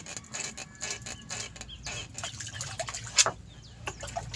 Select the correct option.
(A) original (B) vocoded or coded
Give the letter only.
A